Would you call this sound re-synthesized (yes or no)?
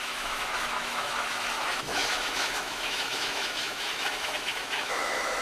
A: yes